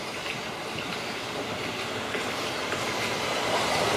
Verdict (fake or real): real